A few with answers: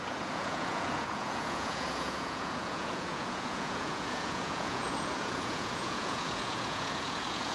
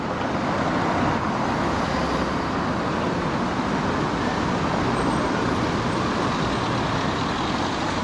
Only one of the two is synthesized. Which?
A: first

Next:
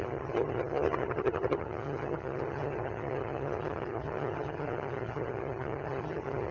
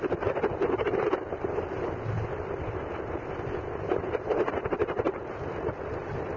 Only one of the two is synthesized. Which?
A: first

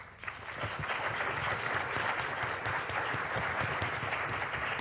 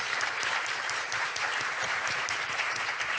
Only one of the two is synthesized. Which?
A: second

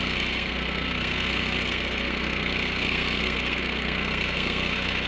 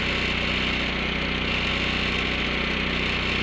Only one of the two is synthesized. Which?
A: first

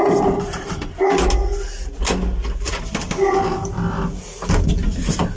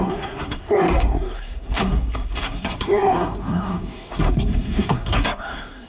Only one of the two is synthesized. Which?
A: second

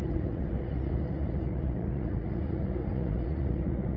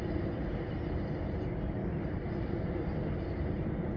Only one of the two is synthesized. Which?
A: first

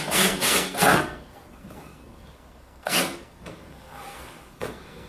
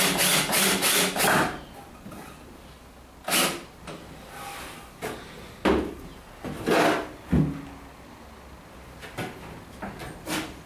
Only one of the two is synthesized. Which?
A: first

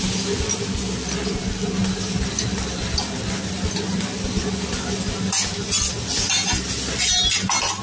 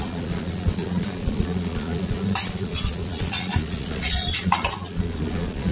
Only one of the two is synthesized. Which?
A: second